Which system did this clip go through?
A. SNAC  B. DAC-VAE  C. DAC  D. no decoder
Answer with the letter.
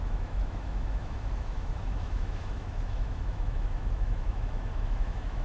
B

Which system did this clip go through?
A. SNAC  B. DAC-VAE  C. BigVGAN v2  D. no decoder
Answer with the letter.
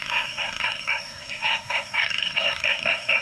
A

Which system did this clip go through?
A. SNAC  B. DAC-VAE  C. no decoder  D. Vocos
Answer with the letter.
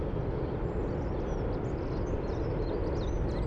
C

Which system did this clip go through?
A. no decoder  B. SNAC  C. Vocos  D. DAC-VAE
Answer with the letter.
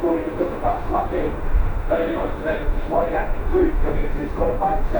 D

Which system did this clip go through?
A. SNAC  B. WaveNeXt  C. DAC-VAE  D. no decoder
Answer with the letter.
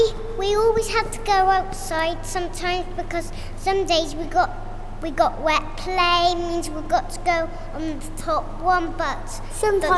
D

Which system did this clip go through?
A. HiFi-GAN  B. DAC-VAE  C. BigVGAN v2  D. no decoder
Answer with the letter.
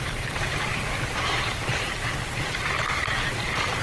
C